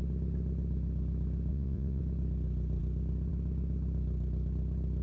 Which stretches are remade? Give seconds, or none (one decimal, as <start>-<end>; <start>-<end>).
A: 1.5-2.0